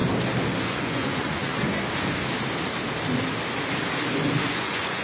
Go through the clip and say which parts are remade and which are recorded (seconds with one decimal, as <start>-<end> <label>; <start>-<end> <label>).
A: 0.0-0.6 recorded; 0.6-1.5 remade; 1.5-4.5 recorded; 4.5-5.0 remade